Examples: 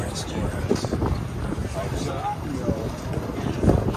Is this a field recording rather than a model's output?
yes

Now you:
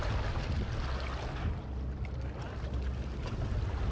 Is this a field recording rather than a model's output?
yes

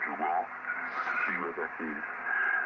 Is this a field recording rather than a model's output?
yes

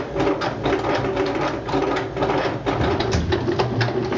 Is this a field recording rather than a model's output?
yes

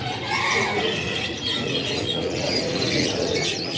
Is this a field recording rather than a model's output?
no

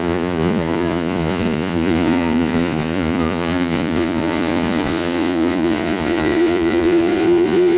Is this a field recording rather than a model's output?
no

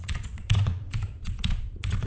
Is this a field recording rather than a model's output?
no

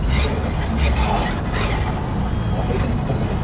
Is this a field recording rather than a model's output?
yes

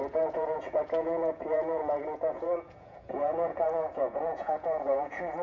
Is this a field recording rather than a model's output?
no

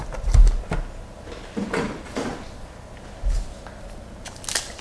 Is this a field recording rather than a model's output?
yes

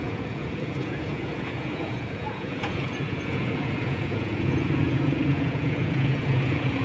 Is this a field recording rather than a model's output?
no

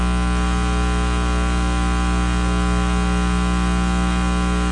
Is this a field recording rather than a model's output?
yes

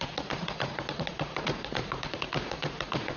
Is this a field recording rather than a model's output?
no